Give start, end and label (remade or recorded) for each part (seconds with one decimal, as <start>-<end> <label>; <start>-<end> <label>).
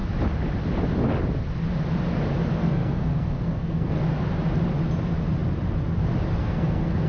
0.0-2.6 recorded; 2.6-4.0 remade; 4.0-6.4 recorded; 6.4-7.1 remade